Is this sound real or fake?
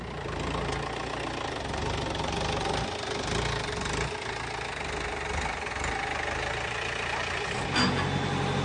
real